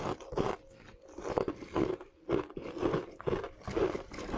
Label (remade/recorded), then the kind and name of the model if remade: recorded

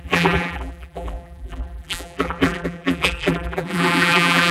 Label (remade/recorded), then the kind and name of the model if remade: remade, vocoder, BigVGAN v2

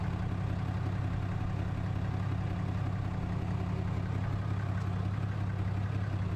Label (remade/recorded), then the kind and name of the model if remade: recorded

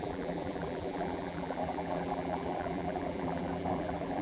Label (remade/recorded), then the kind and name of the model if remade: remade, vocoder, BigVGAN v2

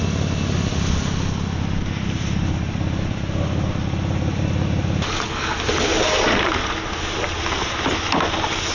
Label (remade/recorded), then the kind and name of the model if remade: recorded